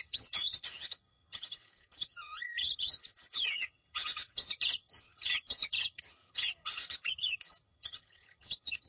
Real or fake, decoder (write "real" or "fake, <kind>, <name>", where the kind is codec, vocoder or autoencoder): fake, vocoder, HiFi-GAN